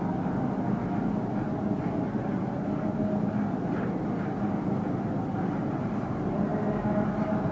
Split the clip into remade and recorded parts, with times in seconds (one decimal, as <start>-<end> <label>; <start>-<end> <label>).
0.0-7.5 recorded